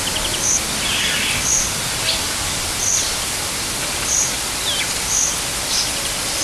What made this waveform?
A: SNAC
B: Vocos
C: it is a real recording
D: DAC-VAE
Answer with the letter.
C